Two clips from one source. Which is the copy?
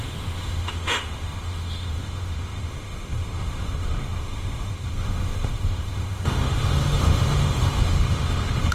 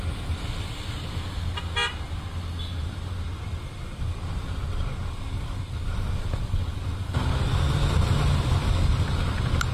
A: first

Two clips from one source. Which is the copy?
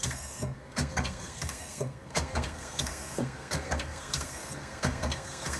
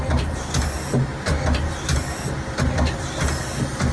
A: first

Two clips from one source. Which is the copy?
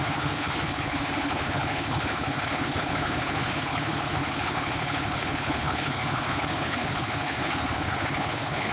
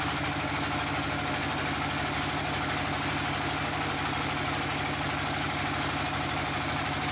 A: first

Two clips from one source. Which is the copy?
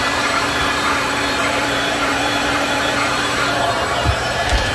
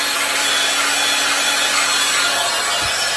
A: first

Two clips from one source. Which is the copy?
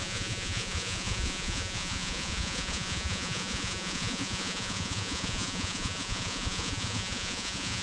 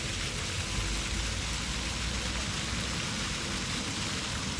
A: first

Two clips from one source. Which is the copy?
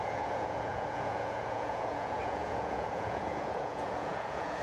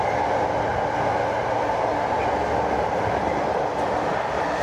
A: first